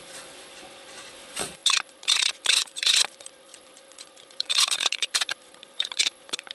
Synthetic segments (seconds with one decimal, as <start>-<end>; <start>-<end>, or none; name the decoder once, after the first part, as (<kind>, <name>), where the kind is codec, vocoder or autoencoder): 0.0-6.5 (vocoder, Vocos)